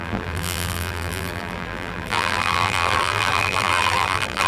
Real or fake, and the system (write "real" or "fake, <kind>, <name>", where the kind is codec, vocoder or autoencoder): fake, vocoder, BigVGAN v2